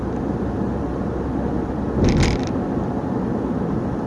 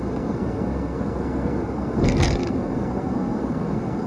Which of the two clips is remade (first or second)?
second